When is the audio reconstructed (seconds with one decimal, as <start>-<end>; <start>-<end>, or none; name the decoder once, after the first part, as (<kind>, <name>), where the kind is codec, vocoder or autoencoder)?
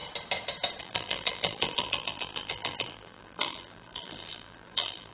0.8-5.1 (vocoder, BigVGAN v2)